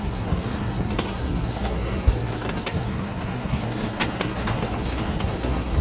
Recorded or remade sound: remade